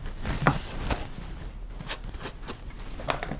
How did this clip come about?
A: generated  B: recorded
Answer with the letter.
B